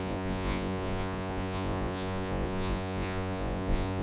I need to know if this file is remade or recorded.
remade